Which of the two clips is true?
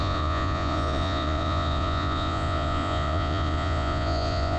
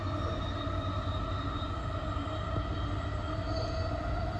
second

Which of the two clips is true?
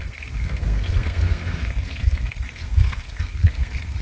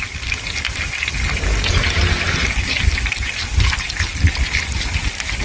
second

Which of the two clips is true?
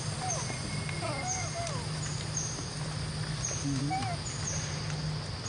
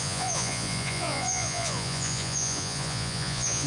first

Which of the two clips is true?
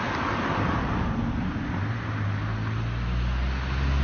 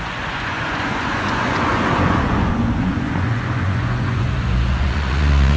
first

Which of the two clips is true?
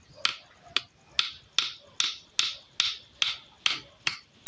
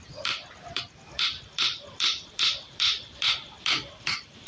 first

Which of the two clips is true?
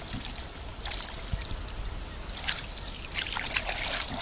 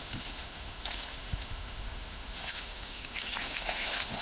first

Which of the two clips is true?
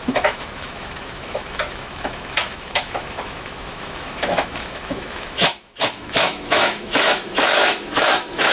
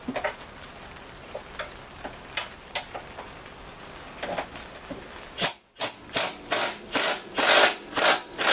second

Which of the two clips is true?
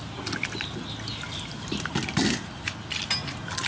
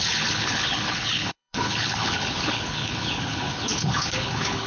first